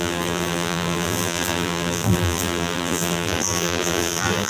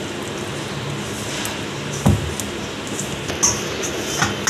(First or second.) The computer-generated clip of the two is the first